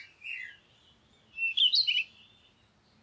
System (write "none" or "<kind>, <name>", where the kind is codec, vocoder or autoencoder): none